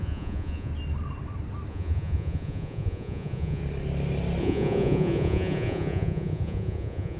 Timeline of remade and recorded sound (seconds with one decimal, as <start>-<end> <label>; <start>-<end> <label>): 0.0-0.7 remade; 0.7-1.7 recorded; 1.7-3.6 remade; 3.6-4.4 recorded; 4.4-7.2 remade